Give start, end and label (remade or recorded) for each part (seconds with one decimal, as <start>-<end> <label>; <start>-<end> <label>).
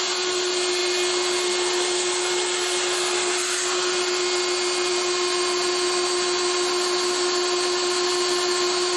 0.0-9.0 recorded